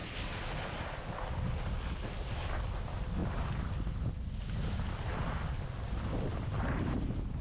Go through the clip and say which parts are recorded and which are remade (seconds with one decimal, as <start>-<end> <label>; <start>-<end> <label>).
0.0-7.4 recorded